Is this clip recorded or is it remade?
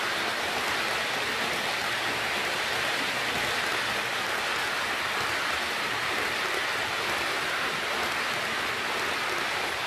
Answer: recorded